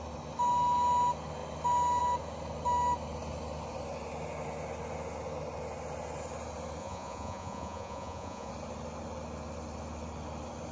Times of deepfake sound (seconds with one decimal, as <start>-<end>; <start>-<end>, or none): 6.8-8.5